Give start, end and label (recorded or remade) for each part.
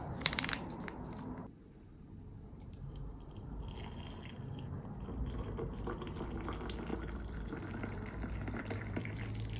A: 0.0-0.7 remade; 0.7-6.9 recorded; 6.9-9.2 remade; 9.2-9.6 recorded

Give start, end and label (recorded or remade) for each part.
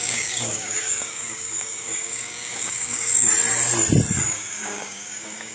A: 0.0-3.3 remade; 3.3-4.3 recorded; 4.3-5.5 remade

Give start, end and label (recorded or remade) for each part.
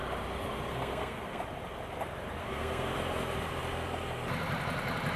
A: 0.0-0.7 recorded; 0.7-1.4 remade; 1.4-2.4 recorded; 2.4-2.9 remade; 2.9-5.2 recorded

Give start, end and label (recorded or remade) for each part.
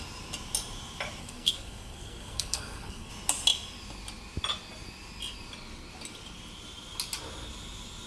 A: 0.0-1.2 recorded; 1.2-3.1 remade; 3.1-8.1 recorded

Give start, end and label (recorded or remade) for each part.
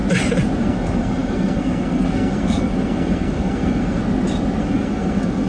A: 0.0-0.6 recorded; 0.6-4.0 remade; 4.0-4.6 recorded; 4.6-5.5 remade